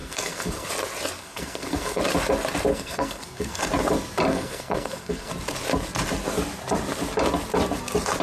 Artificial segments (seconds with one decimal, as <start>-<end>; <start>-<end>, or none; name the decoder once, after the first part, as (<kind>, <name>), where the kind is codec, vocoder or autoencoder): 0.0-0.7 (codec, SNAC); 1.2-2.0; 2.7-3.6; 4.3-5.3